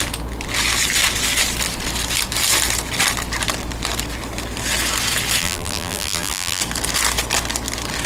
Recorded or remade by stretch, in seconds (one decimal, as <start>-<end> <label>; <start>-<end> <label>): 0.0-5.4 recorded; 5.4-6.6 remade; 6.6-8.1 recorded